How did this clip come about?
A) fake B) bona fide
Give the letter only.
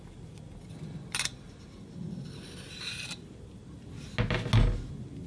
B